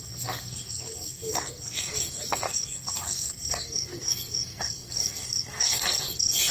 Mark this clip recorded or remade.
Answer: remade